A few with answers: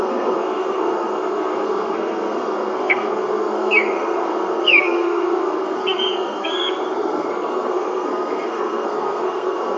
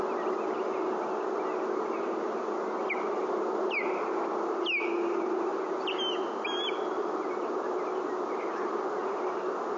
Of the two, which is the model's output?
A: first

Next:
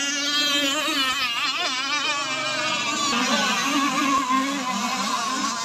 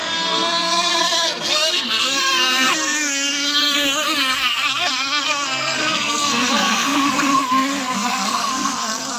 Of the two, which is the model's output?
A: second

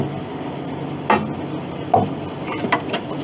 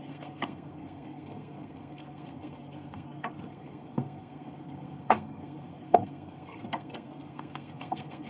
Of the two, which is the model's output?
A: second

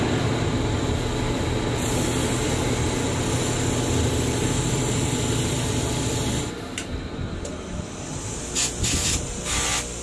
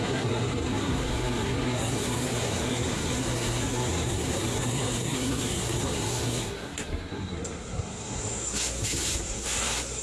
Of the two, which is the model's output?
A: second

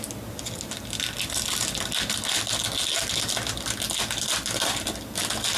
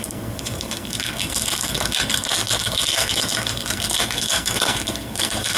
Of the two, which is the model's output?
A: second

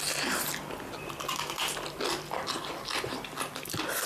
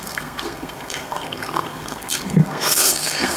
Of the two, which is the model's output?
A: second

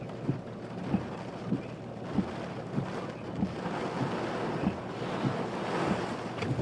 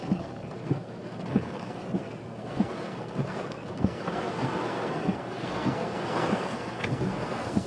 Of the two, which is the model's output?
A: second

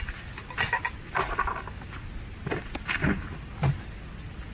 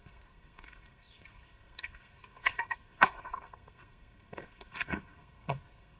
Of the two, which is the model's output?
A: second